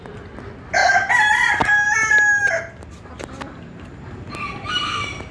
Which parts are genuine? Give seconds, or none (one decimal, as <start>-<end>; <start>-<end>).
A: 0.0-0.8; 2.4-5.3